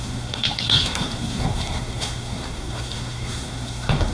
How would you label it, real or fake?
fake